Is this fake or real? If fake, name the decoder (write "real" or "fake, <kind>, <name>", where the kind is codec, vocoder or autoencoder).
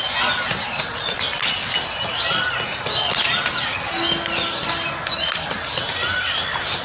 real